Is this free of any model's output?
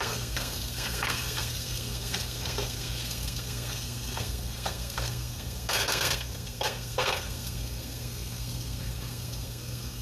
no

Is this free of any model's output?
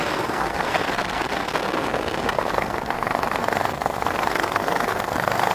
no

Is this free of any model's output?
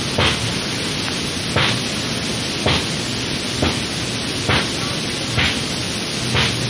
yes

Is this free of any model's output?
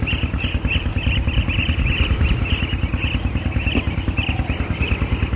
yes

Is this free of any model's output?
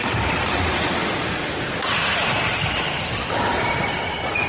yes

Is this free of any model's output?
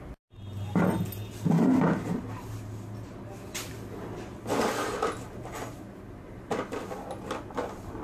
yes